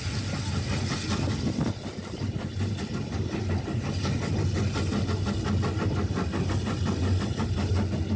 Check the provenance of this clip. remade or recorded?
recorded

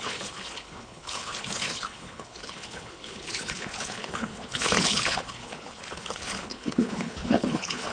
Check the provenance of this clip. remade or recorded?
remade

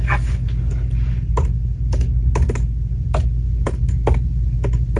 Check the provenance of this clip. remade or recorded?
recorded